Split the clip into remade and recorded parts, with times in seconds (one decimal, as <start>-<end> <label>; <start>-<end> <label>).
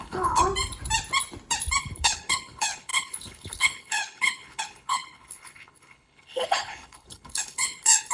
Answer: 0.0-0.5 remade; 0.5-1.8 recorded; 1.8-8.1 remade